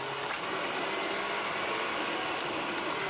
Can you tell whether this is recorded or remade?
recorded